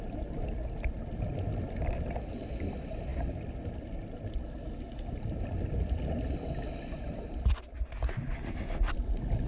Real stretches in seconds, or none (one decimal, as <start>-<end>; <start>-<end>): 0.0-9.5